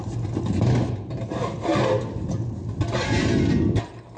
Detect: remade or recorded recorded